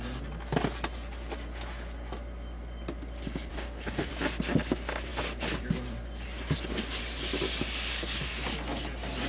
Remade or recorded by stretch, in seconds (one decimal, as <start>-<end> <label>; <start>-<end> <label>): 0.0-3.5 recorded; 3.5-4.1 remade; 4.1-9.3 recorded